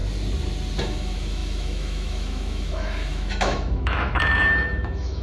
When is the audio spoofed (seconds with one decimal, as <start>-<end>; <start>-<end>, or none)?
0.8-5.2